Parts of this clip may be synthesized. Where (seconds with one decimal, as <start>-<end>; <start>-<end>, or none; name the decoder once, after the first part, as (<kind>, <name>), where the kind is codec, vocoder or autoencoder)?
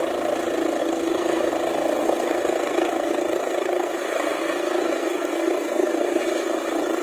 0.8-1.5 (codec, SNAC); 2.0-6.2